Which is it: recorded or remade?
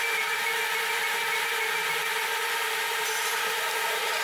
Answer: recorded